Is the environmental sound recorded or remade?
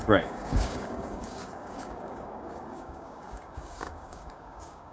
remade